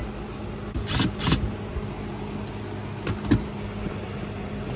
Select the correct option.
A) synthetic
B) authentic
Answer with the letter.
B